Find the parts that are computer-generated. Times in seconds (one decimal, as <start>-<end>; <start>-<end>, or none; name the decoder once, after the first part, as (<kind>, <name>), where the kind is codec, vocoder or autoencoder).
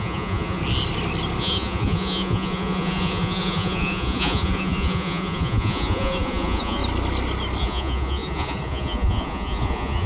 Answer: 0.0-0.6 (vocoder, Vocos); 1.4-6.8; 7.6-10.1